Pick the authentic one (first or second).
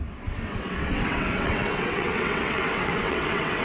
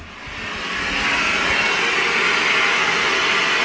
second